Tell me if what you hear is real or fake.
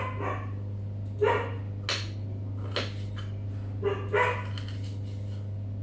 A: real